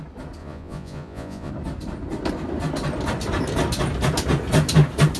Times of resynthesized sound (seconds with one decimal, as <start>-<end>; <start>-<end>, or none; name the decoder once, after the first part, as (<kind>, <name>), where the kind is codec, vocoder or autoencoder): 0.4-1.5 (vocoder, Vocos)